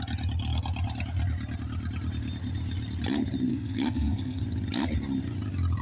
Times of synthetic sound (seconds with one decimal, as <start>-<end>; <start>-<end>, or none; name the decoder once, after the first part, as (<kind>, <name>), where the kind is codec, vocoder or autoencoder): 3.5-4.4 (codec, SNAC)